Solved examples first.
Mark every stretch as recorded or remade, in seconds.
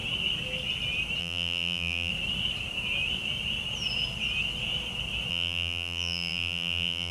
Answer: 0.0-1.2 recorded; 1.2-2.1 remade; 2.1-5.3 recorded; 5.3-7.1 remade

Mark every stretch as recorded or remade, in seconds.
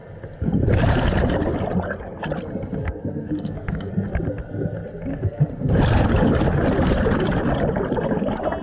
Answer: 0.0-2.8 recorded; 2.8-3.9 remade; 3.9-5.1 recorded; 5.1-5.7 remade; 5.7-8.6 recorded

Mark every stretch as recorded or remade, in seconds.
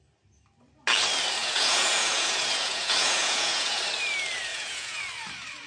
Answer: 0.0-1.4 recorded; 1.4-3.8 remade; 3.8-4.5 recorded; 4.5-5.0 remade; 5.0-5.7 recorded